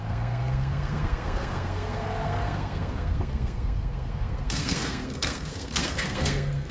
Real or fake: fake